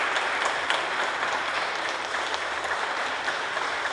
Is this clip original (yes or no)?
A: yes